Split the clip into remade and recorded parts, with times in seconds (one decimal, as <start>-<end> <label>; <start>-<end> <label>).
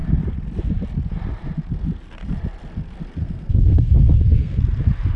0.0-3.2 recorded; 3.2-4.6 remade; 4.6-5.2 recorded